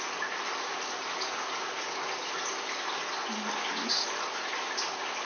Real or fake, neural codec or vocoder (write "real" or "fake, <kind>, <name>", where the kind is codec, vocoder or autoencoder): real